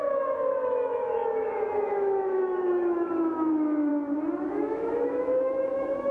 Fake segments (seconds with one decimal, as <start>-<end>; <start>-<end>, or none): 0.0-3.9; 4.5-6.1